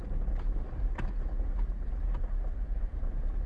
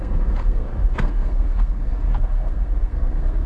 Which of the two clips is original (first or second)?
first